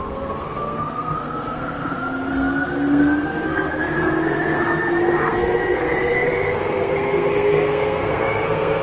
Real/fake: fake